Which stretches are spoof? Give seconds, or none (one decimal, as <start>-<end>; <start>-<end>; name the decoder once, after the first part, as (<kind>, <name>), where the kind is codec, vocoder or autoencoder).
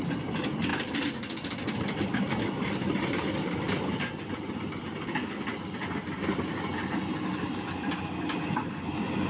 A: none